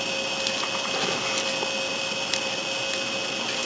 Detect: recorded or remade recorded